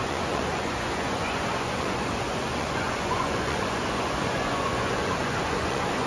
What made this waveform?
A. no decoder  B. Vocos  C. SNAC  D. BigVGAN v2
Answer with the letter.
B